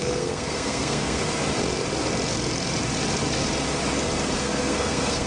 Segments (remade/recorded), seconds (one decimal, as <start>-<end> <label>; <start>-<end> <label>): 0.0-1.2 remade; 1.2-4.4 recorded; 4.4-5.3 remade